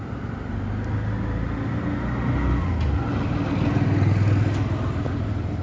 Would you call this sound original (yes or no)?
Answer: yes